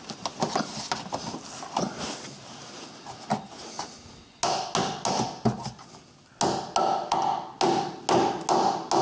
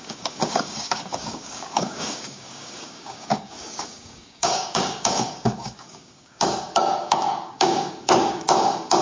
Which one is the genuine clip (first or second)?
first